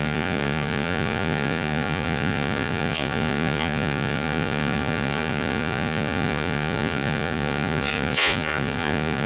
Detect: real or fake fake